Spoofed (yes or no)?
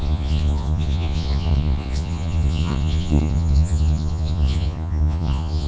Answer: yes